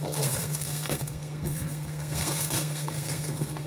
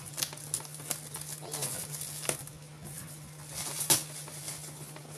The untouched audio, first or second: second